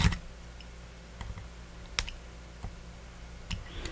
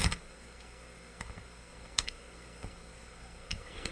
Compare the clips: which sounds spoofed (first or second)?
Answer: second